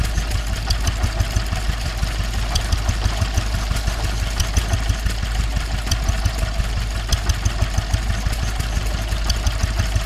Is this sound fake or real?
real